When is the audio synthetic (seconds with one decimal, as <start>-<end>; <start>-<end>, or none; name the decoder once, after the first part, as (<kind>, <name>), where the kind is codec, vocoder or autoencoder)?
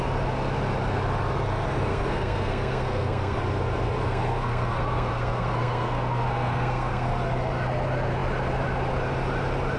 1.9-3.4 (codec, SNAC); 4.0-7.1